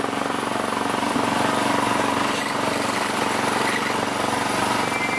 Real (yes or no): yes